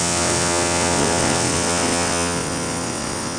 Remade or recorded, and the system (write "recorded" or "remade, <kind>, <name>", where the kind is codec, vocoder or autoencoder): remade, vocoder, WaveNeXt